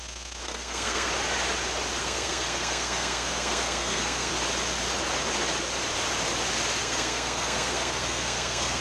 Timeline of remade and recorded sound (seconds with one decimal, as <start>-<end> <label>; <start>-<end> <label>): 0.0-0.4 recorded; 0.4-1.1 remade; 1.1-2.0 recorded; 2.0-4.3 remade; 4.3-6.8 recorded; 6.8-8.8 remade